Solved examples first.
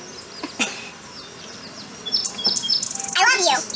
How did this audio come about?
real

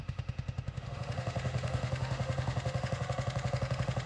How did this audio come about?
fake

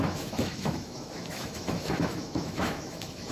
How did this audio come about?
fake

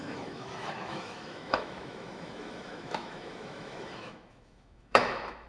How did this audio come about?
fake